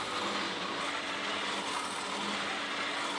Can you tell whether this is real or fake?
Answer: real